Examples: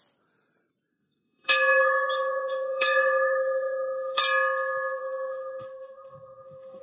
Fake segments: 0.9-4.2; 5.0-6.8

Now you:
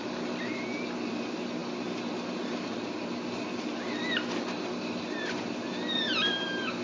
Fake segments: none

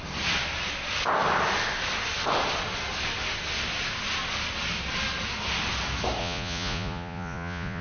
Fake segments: 6.2-7.8